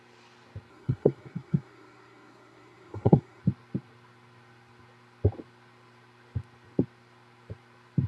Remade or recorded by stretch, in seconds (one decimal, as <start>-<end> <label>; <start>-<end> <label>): 0.0-0.7 recorded; 0.7-3.4 remade; 3.4-8.1 recorded